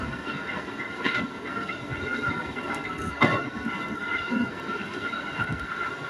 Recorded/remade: remade